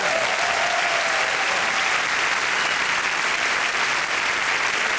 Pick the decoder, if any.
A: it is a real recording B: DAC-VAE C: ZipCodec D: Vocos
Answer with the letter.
A